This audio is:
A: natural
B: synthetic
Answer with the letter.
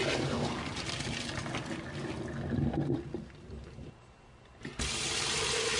A